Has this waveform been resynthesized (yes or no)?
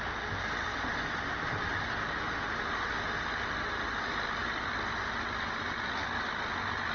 no